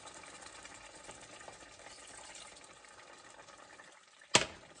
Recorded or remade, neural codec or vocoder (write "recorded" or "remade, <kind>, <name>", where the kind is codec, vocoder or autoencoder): recorded